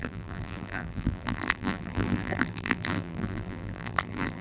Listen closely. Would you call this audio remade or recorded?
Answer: remade